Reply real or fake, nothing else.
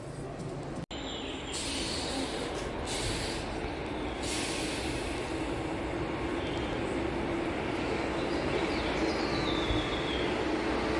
real